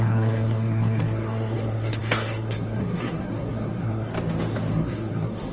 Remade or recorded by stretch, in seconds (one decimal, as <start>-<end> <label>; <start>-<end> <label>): 0.0-4.1 remade; 4.1-4.7 recorded; 4.7-5.5 remade